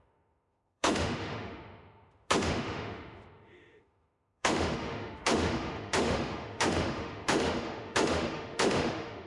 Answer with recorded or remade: remade